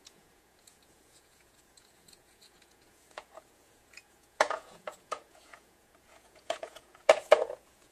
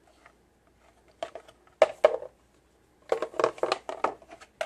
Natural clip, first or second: second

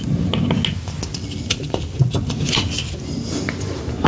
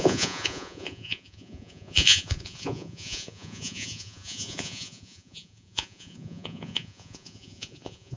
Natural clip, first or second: first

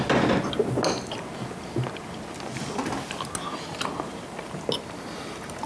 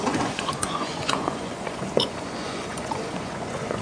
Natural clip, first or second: first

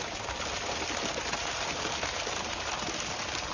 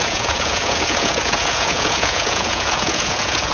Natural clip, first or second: first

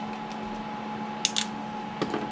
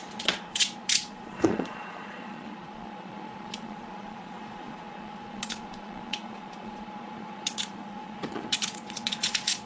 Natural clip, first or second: first